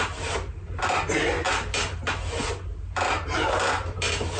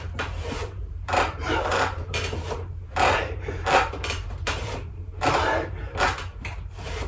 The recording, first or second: first